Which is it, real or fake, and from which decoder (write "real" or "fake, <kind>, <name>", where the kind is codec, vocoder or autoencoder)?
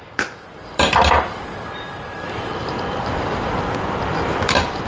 fake, vocoder, BigVGAN v2